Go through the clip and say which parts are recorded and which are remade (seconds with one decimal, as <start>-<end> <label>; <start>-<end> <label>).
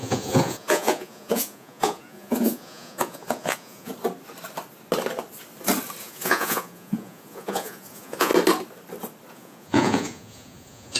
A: 0.0-3.9 remade; 3.9-6.0 recorded; 6.0-8.3 remade; 8.3-9.3 recorded; 9.3-11.0 remade